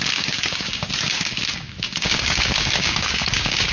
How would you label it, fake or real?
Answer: fake